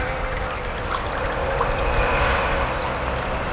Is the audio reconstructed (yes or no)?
no